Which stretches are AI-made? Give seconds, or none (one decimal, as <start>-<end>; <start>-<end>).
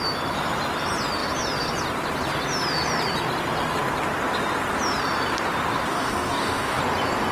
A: 5.9-6.8